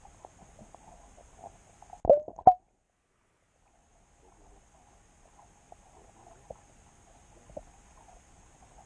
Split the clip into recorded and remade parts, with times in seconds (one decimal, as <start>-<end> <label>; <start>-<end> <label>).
0.0-8.9 recorded